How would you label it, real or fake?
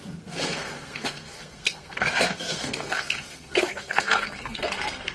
fake